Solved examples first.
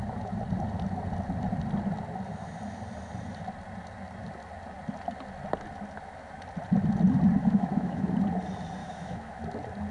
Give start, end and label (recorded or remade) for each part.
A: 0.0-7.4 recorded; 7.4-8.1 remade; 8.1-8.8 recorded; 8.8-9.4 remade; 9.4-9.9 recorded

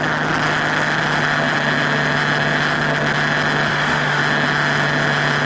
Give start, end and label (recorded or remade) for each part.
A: 0.0-3.7 recorded; 3.7-4.2 remade; 4.2-5.5 recorded

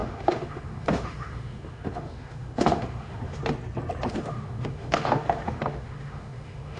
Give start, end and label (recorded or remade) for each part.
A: 0.0-3.4 remade; 3.4-4.1 recorded; 4.1-6.8 remade

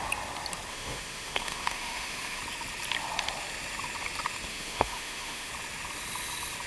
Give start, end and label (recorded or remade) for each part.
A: 0.0-0.7 recorded; 0.7-2.4 remade; 2.4-4.5 recorded; 4.5-5.5 remade; 5.5-6.7 recorded